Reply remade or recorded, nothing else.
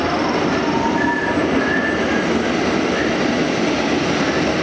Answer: recorded